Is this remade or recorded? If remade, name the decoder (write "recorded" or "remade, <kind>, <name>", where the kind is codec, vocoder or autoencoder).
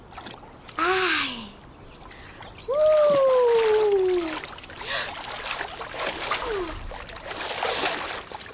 recorded